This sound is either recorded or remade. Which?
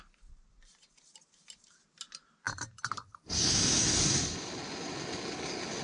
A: recorded